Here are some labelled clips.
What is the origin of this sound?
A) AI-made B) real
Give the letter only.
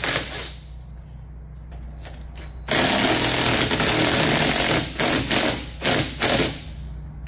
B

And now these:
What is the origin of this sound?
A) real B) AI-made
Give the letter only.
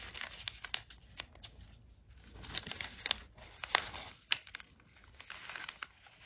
A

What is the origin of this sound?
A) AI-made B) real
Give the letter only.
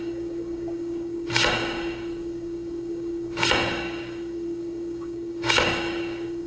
A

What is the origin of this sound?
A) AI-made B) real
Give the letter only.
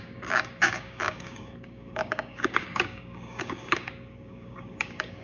A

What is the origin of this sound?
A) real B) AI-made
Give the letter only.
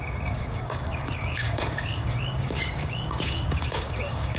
B